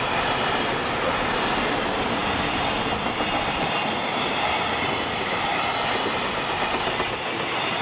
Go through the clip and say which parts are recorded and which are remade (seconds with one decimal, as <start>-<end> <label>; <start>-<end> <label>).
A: 0.0-7.8 recorded